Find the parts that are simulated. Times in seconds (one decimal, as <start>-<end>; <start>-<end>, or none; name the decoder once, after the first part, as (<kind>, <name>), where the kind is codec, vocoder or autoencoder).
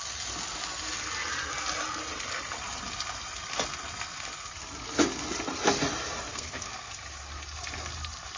6.3-6.9 (codec, SNAC)